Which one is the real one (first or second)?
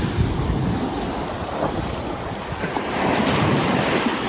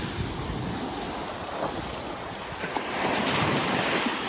second